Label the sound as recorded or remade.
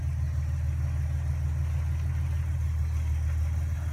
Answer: recorded